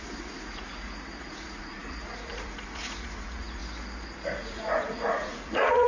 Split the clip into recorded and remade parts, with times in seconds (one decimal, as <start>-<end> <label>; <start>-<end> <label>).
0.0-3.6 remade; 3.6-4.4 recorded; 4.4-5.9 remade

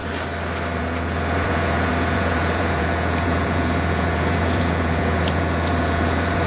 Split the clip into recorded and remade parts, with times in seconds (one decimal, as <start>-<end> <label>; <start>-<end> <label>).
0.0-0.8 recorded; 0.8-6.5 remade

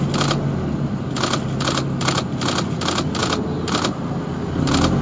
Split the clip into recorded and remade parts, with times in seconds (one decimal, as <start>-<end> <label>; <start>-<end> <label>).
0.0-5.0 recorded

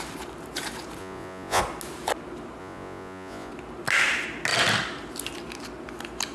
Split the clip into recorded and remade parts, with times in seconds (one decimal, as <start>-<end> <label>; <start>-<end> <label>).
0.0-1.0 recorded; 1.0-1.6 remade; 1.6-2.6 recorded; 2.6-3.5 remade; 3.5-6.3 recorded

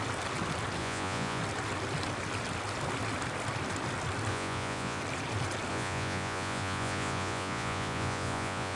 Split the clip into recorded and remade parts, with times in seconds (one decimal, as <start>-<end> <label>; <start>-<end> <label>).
0.0-0.8 recorded; 0.8-1.4 remade; 1.4-4.3 recorded; 4.3-5.0 remade; 5.0-5.7 recorded; 5.7-8.8 remade

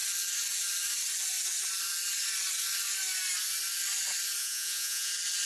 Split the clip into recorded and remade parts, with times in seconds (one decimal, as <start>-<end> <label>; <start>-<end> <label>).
0.0-4.4 recorded; 4.4-5.1 remade; 5.1-5.5 recorded